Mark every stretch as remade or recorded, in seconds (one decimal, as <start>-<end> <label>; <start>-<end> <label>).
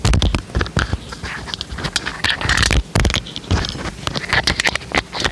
0.0-5.3 recorded